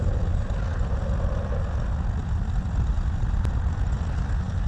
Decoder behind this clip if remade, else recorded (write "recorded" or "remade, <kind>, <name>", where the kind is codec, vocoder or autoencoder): recorded